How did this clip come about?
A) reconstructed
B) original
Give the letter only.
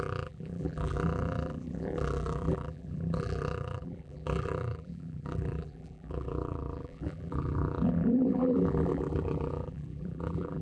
A